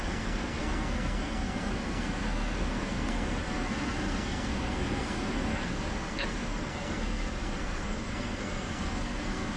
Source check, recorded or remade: remade